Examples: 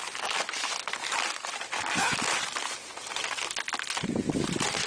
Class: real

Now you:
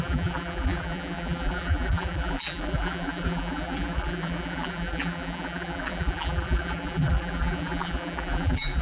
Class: fake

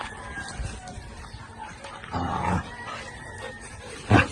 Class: real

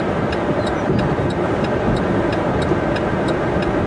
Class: real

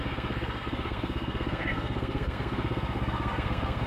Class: fake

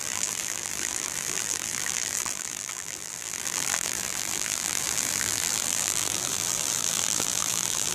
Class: fake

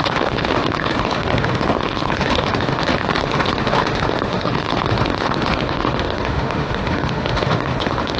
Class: fake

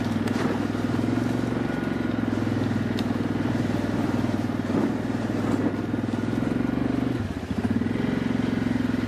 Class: real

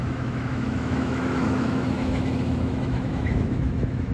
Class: fake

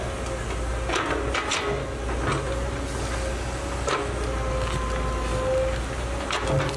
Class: real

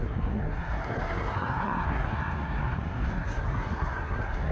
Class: fake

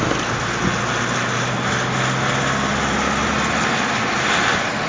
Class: real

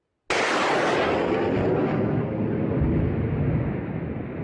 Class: real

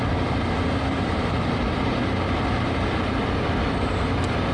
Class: real